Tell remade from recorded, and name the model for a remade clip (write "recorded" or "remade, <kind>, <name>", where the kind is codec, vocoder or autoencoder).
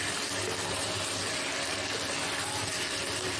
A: recorded